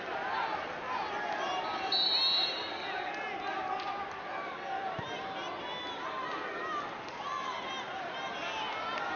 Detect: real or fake real